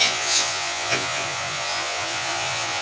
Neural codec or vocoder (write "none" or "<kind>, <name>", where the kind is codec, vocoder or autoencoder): vocoder, Vocos